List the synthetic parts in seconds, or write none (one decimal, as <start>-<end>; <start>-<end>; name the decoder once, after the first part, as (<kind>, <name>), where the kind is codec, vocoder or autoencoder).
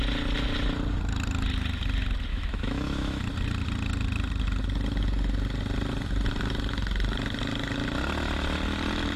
2.3-3.2 (autoencoder, DAC-VAE)